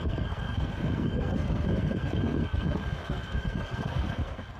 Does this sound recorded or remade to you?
remade